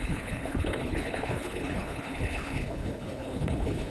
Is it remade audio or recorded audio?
remade